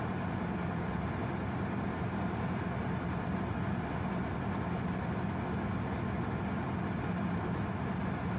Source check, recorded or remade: recorded